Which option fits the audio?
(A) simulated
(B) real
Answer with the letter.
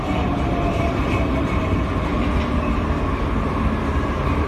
B